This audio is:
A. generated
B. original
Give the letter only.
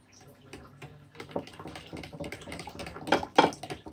B